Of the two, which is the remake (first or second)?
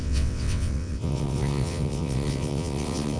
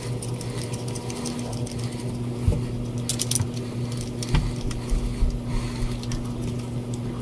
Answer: first